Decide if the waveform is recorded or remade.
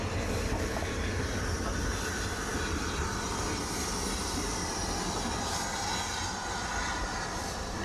recorded